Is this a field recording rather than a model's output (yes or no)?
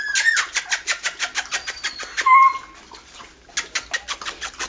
yes